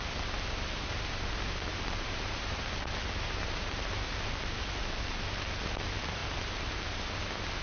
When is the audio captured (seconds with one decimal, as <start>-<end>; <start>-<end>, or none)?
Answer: 0.0-1.7; 4.3-7.6